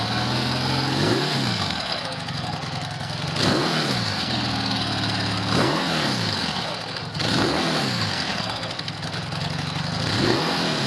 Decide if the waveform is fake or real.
fake